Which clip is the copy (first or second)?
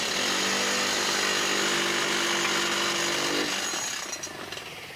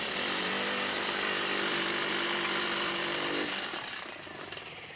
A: second